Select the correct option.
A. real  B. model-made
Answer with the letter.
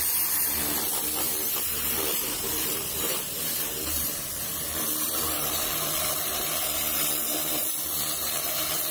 B